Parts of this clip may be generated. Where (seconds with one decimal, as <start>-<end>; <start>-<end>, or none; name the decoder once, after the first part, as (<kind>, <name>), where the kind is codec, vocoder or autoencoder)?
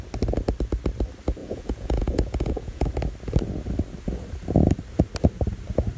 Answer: 1.4-2.9 (vocoder, Vocos)